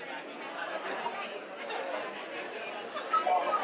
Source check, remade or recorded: recorded